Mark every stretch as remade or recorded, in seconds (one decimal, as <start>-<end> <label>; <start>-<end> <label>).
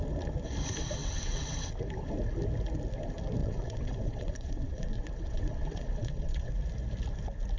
0.0-1.0 recorded; 1.0-1.7 remade; 1.7-3.4 recorded; 3.4-6.5 remade; 6.5-7.6 recorded